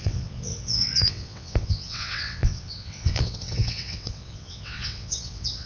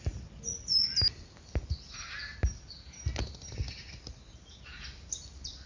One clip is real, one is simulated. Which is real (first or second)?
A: second